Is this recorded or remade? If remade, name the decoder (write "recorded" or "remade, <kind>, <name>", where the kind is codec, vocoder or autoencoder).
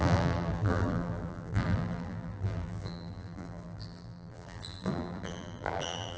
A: remade, vocoder, BigVGAN v2